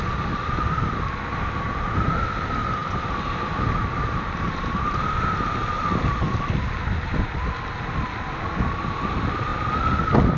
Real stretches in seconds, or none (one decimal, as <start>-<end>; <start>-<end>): 0.0-10.4